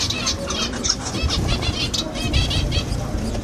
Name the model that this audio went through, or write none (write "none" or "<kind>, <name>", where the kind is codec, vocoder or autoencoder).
none